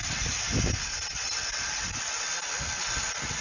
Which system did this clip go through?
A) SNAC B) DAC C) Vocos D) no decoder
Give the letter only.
D